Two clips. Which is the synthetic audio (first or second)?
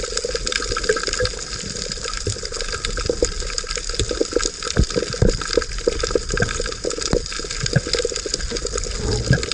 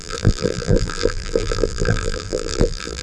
second